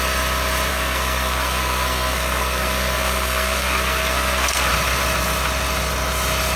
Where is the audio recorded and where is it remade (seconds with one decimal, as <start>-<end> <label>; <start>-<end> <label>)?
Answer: 0.0-0.7 recorded; 0.7-4.7 remade; 4.7-6.6 recorded